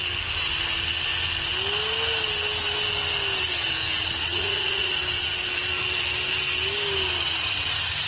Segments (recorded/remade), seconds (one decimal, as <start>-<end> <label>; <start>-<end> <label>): 0.0-4.2 recorded; 4.2-5.0 remade; 5.0-8.1 recorded